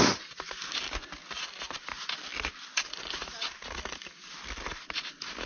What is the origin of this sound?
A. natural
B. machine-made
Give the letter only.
A